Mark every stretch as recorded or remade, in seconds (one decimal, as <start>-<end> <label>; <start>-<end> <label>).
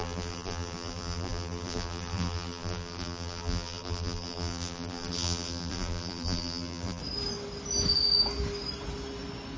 0.0-7.0 remade; 7.0-9.6 recorded